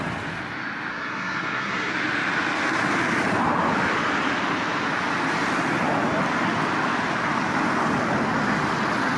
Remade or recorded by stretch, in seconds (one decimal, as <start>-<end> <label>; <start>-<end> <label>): 0.0-0.9 recorded; 0.9-1.9 remade; 1.9-9.2 recorded